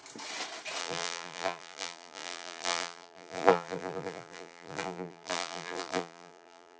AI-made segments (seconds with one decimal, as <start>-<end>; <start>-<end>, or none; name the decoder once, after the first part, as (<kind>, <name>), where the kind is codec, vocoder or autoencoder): 0.8-6.8 (vocoder, BigVGAN v2)